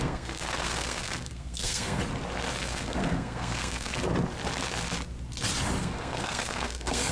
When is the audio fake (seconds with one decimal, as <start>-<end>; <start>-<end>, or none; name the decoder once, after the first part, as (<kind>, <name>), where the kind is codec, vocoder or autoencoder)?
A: 0.0-2.0 (codec, SNAC); 2.6-4.0; 5.8-7.1